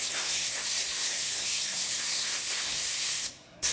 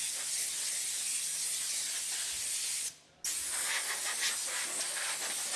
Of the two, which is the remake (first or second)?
first